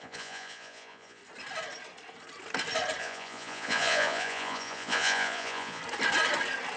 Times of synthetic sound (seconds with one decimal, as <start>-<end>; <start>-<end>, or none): 0.0-1.2; 3.0-5.8